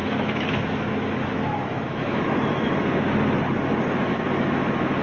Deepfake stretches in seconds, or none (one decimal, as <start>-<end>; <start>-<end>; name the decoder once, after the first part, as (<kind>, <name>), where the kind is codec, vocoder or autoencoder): 0.0-3.0 (autoencoder, DAC-VAE); 4.1-5.0